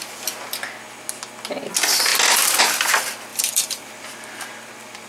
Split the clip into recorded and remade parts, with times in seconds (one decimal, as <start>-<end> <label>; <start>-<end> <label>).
0.0-3.3 recorded; 3.3-5.1 remade